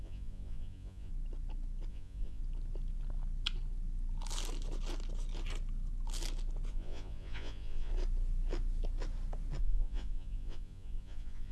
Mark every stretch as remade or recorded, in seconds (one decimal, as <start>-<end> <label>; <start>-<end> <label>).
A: 0.0-1.1 remade; 1.1-1.9 recorded; 1.9-2.4 remade; 2.4-6.7 recorded; 6.7-7.9 remade; 7.9-9.6 recorded; 9.6-11.5 remade